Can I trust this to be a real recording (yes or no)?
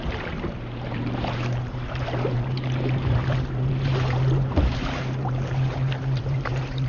no